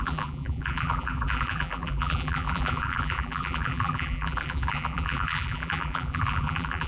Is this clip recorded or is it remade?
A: remade